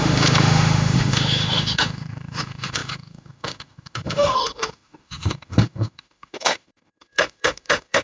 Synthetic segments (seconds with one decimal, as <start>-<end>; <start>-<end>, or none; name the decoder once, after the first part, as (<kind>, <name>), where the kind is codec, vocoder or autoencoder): 0.0-8.0 (autoencoder, DAC-VAE)